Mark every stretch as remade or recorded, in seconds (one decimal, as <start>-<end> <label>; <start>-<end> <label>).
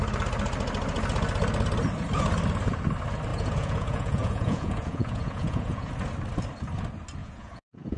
0.0-3.3 recorded; 3.3-5.9 remade; 5.9-7.2 recorded; 7.2-8.0 remade